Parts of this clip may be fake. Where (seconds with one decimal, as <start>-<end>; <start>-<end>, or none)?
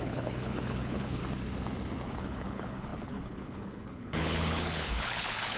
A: 0.0-1.2; 2.1-5.6